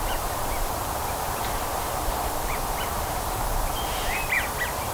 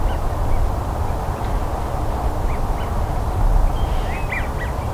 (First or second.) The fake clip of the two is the first